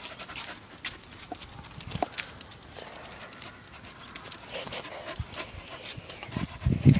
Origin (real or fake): real